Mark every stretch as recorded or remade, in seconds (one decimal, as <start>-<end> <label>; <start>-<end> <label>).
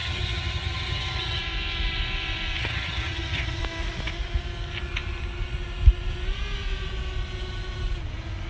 0.0-1.4 remade; 1.4-2.6 recorded; 2.6-3.6 remade; 3.6-8.5 recorded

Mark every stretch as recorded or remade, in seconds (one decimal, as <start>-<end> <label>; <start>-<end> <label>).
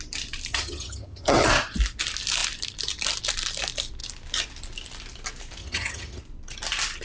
0.0-0.5 recorded; 0.5-1.5 remade; 1.5-5.6 recorded; 5.6-6.2 remade; 6.2-7.0 recorded